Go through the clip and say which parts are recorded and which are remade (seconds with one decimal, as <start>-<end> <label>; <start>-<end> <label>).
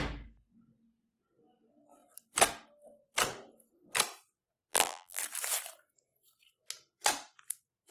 0.0-4.7 recorded; 4.7-5.2 remade; 5.2-7.9 recorded